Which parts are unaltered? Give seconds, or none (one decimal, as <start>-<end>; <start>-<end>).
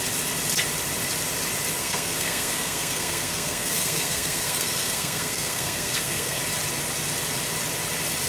0.0-1.8; 6.4-8.3